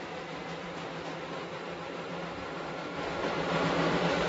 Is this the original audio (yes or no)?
no